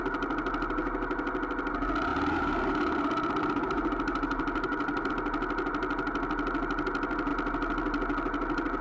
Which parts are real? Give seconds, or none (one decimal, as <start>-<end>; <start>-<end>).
0.0-2.1; 5.1-8.8